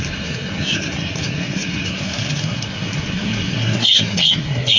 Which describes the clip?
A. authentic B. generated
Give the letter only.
B